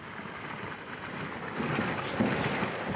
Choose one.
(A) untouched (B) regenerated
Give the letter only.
A